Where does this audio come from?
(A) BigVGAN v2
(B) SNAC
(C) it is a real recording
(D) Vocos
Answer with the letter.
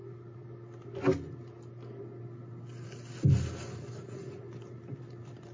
C